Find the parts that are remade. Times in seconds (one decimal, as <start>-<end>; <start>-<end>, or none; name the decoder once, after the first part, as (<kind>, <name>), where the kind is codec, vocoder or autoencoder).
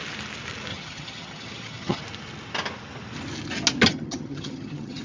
0.7-2.0 (vocoder, HiFi-GAN); 3.9-5.0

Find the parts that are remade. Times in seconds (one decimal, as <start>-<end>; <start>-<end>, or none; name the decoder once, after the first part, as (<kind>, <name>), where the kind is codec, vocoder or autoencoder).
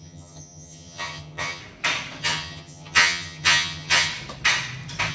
0.0-1.6 (vocoder, HiFi-GAN); 2.2-4.1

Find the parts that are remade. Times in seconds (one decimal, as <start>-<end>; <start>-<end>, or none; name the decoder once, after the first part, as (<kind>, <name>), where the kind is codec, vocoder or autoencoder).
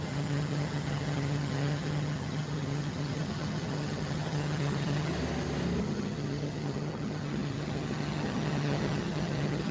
0.0-5.1 (vocoder, HiFi-GAN); 5.8-9.7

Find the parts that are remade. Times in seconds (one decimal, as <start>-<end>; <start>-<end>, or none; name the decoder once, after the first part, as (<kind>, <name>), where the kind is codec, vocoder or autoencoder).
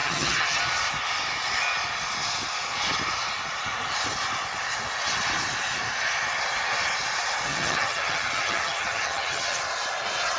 0.0-0.6 (vocoder, HiFi-GAN); 7.5-9.6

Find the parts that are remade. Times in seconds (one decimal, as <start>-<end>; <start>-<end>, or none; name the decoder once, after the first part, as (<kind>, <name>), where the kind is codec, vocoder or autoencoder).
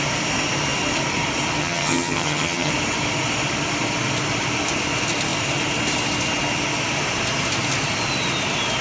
1.6-2.7 (vocoder, HiFi-GAN)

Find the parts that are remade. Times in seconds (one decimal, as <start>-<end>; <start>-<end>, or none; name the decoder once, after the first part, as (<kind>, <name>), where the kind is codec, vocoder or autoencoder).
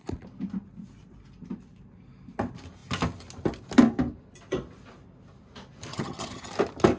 5.9-6.5 (vocoder, HiFi-GAN)